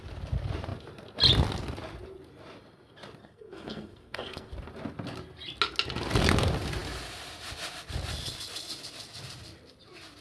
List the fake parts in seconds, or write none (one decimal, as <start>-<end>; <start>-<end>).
3.2-4.5